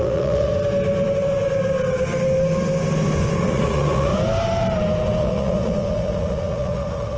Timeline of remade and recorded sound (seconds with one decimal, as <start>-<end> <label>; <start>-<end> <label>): 0.0-0.5 remade; 0.5-3.4 recorded; 3.4-4.1 remade; 4.1-5.2 recorded; 5.2-7.2 remade